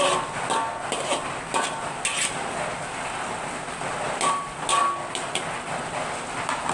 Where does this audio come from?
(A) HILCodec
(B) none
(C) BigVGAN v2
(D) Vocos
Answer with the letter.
B